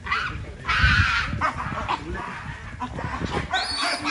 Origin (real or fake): real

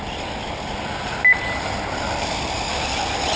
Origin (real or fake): real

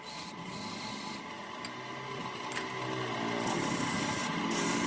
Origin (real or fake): real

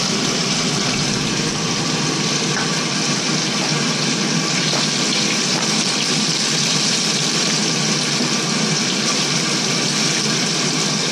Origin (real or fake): real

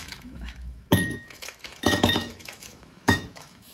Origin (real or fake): fake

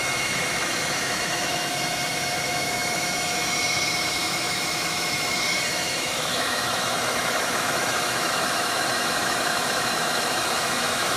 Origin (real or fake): fake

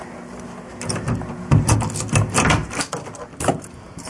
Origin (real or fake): real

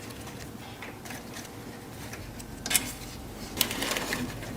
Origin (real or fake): real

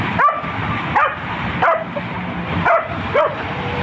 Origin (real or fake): real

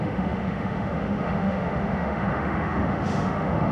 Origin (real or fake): fake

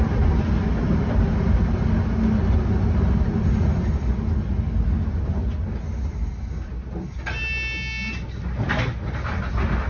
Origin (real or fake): real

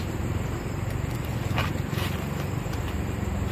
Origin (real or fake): real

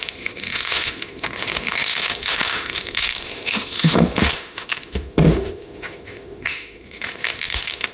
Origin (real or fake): fake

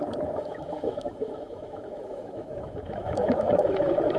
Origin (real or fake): fake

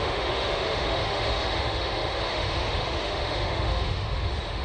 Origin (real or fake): fake